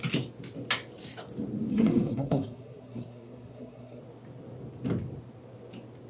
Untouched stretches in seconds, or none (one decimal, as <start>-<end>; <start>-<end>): 0.0-1.7; 4.0-6.1